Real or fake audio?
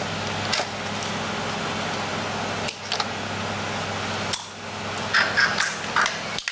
real